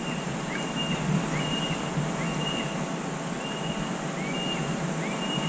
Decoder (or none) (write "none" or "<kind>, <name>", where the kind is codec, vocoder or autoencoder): none